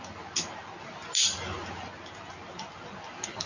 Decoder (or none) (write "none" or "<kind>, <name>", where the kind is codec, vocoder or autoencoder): none